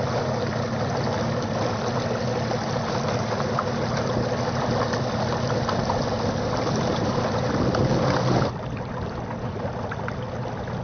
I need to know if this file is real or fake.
real